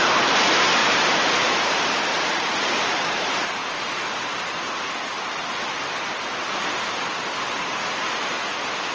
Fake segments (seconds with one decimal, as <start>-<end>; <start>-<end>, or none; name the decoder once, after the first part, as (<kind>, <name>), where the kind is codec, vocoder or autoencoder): 0.8-3.5 (vocoder, BigVGAN v2)